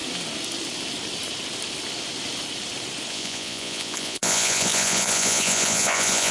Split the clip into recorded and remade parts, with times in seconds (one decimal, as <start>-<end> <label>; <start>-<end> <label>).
0.0-3.1 recorded; 3.1-6.3 remade